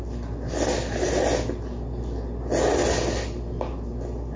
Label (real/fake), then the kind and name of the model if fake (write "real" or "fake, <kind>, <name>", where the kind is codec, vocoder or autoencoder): real